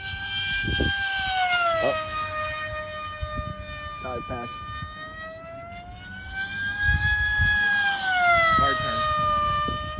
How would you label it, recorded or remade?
recorded